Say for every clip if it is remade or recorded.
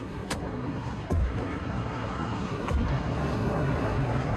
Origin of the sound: remade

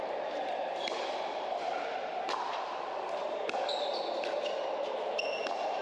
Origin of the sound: recorded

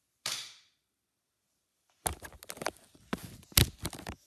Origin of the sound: recorded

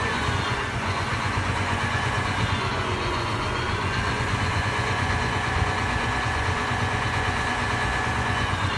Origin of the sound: remade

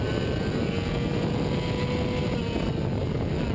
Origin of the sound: recorded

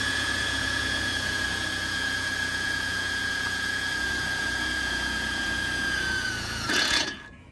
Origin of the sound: remade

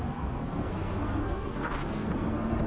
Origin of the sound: remade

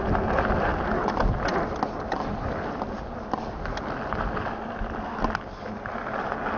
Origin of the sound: recorded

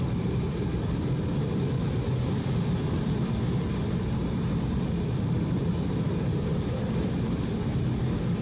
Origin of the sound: recorded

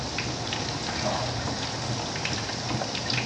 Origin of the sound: recorded